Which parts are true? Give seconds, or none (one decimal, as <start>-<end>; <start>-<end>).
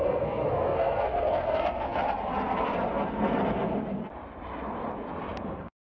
2.0-5.6